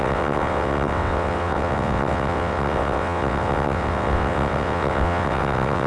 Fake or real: fake